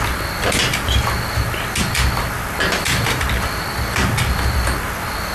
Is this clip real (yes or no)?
yes